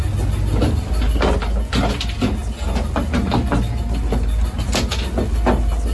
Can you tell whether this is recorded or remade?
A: recorded